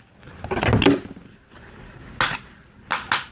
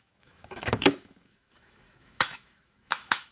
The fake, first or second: second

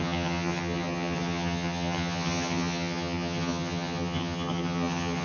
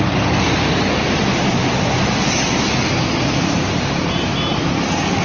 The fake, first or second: first